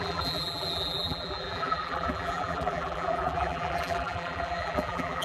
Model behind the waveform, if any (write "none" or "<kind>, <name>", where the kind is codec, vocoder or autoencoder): vocoder, BigVGAN v2